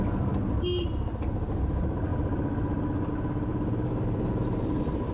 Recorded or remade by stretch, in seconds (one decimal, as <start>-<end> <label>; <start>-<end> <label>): 0.0-5.1 recorded